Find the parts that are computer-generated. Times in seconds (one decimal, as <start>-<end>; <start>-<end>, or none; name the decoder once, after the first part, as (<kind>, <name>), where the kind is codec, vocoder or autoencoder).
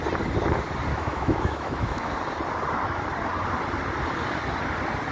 0.9-2.1 (autoencoder, DAC-VAE)